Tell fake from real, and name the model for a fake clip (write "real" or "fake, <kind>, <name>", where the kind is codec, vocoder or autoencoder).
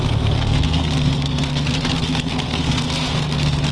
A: fake, codec, SNAC